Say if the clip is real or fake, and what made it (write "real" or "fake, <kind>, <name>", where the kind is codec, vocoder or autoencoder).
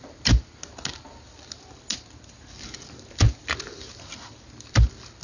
real